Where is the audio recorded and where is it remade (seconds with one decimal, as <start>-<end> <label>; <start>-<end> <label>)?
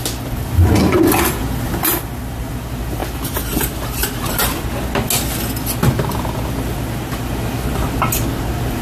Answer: 0.0-8.8 recorded